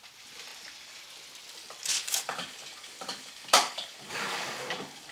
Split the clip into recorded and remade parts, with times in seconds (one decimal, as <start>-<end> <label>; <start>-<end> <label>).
0.0-1.9 recorded; 1.9-5.1 remade